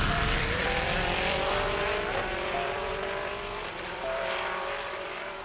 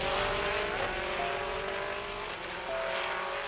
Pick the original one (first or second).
second